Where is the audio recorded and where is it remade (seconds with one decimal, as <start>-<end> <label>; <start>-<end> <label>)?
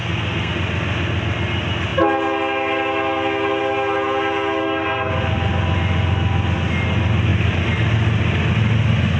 0.0-0.5 remade; 0.5-4.6 recorded; 4.6-5.1 remade; 5.1-9.2 recorded